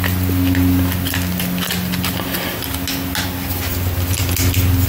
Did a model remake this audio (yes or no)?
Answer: no